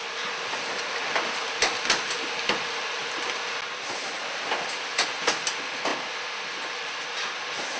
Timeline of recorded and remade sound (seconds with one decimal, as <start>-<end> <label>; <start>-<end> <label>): 0.0-7.8 recorded